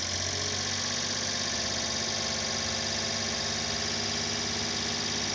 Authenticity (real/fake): real